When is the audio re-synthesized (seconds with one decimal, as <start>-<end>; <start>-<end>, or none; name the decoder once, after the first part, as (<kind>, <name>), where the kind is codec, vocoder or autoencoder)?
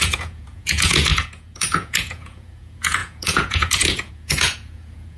0.0-5.2 (vocoder, Vocos)